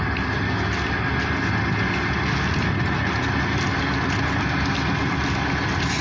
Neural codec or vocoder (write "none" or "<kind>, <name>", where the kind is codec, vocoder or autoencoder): none